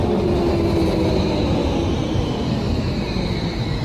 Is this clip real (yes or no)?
yes